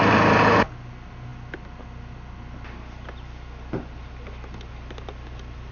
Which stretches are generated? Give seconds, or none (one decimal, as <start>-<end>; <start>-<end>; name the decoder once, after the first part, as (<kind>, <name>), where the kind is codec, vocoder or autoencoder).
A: none